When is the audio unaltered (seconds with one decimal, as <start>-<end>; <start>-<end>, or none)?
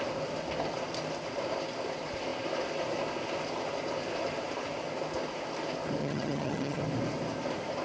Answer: 0.0-6.0; 6.8-7.8